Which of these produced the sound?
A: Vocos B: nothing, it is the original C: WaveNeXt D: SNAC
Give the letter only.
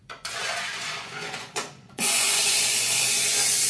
A